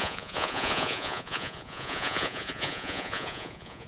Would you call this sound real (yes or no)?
no